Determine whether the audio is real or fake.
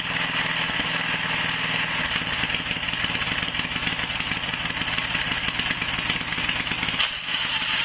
real